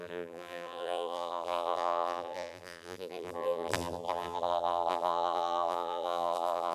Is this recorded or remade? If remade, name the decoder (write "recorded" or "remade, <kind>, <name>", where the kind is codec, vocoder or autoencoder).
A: remade, vocoder, BigVGAN v2